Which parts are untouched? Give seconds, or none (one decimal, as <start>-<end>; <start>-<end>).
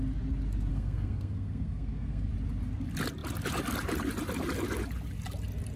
0.0-0.7; 2.3-5.8